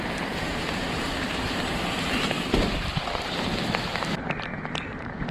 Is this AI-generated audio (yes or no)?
yes